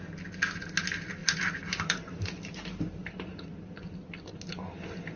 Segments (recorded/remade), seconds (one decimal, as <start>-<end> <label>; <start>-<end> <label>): 0.0-1.2 recorded; 1.2-4.3 remade; 4.3-5.2 recorded